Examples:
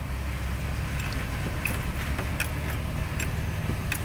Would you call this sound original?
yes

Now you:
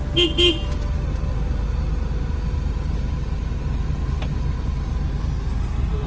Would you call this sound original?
yes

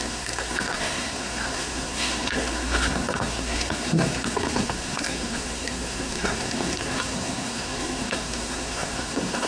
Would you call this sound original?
no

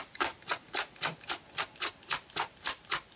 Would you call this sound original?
yes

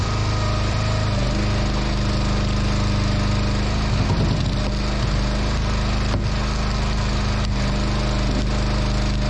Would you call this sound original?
yes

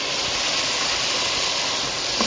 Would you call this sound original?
yes